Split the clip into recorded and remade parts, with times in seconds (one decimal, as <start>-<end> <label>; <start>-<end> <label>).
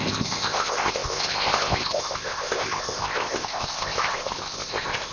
0.0-5.1 remade